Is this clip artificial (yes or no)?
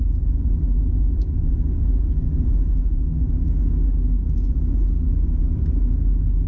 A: no